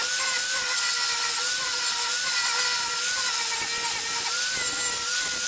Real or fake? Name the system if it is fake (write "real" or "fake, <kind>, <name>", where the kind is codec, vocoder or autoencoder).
real